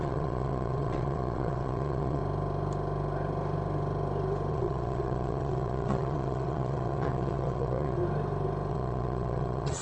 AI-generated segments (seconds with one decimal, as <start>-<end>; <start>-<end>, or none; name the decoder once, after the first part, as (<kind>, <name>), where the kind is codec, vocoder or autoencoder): 0.0-2.2 (vocoder, WaveNeXt); 4.5-8.0; 8.7-9.8